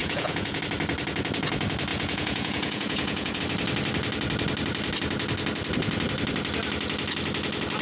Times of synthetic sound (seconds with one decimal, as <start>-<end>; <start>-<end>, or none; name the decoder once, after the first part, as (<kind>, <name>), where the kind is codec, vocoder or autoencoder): 0.0-0.6 (vocoder, Vocos); 1.9-3.4